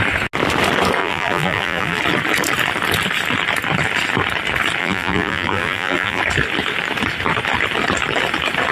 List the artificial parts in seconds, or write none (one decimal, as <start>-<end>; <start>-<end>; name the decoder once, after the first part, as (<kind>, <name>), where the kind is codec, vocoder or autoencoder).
1.0-2.0 (vocoder, BigVGAN v2); 4.8-6.2